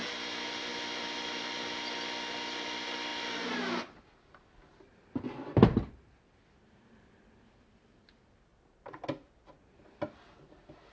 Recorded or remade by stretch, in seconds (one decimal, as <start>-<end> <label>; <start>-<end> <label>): 0.0-10.9 recorded